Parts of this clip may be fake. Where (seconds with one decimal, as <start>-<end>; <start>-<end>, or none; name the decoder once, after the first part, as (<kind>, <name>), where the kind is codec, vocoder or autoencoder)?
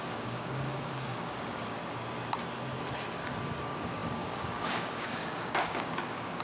0.0-1.8 (codec, DAC); 3.6-6.4